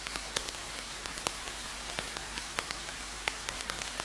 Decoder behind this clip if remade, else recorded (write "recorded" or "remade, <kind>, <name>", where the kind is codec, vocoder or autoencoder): remade, codec, SNAC